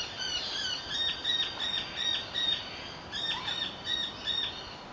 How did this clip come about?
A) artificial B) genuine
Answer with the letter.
B